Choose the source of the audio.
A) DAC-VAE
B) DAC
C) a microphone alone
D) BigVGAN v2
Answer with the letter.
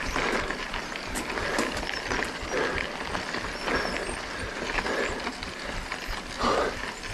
C